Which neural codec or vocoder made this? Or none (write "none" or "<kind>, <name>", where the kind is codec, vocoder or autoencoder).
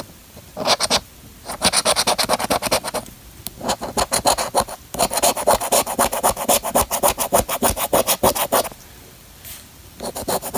none